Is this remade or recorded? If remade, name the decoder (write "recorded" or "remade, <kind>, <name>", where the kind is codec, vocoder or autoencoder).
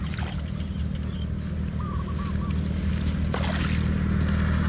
recorded